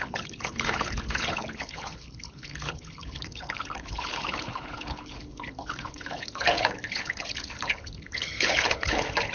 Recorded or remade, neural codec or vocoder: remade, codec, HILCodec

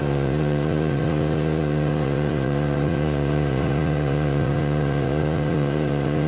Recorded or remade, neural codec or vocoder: remade, vocoder, Vocos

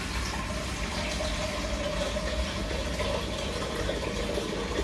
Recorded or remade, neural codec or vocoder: recorded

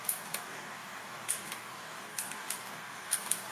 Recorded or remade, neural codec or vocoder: remade, codec, DAC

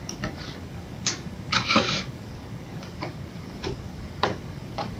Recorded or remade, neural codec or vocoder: remade, codec, DAC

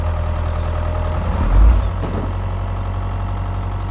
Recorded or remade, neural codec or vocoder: recorded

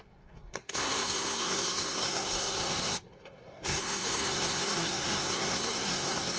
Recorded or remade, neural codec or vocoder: remade, codec, SNAC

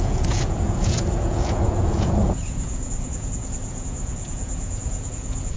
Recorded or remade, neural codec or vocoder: remade, vocoder, Vocos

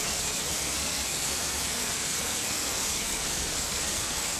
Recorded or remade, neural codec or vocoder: remade, codec, SNAC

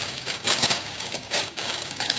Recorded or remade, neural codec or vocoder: remade, codec, DAC